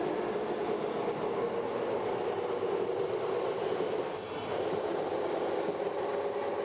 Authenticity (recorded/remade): recorded